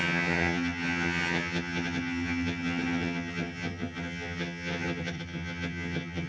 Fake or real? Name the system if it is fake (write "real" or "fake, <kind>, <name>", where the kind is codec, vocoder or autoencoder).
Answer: fake, vocoder, HiFi-GAN